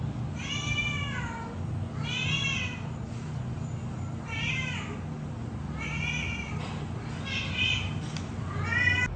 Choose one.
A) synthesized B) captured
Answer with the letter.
B